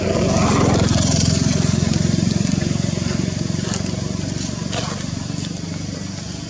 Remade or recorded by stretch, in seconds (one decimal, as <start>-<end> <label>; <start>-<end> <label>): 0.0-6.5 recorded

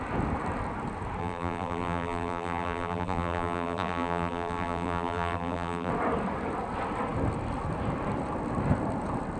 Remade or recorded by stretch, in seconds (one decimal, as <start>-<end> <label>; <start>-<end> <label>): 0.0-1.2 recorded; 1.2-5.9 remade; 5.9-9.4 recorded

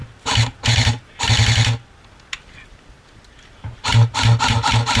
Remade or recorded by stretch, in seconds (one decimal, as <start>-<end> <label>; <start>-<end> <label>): 0.0-5.0 recorded

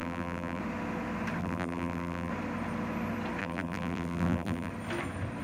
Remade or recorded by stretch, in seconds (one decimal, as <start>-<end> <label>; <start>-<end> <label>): 0.0-0.6 remade; 0.6-1.4 recorded; 1.4-2.3 remade; 2.3-3.4 recorded; 3.4-4.7 remade; 4.7-5.4 recorded

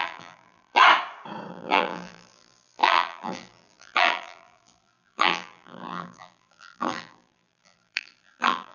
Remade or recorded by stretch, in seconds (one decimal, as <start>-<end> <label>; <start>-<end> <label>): 0.0-0.8 remade; 0.8-1.5 recorded; 1.5-8.7 remade